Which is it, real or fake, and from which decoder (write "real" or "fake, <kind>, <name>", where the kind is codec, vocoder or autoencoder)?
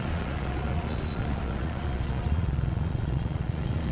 fake, vocoder, Vocos